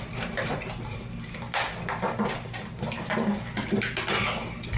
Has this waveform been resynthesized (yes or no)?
no